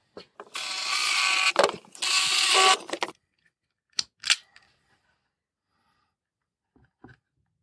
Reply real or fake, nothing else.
real